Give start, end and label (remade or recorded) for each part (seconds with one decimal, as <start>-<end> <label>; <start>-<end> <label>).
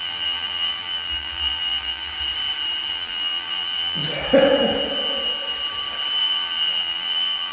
0.0-2.1 remade; 2.1-2.9 recorded; 2.9-4.0 remade; 4.0-6.2 recorded; 6.2-7.5 remade